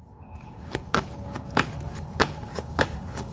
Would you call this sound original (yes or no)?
no